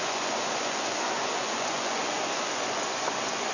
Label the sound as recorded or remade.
remade